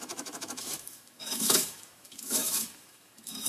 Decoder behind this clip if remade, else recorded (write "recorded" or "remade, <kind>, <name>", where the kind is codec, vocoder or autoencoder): remade, autoencoder, DAC-VAE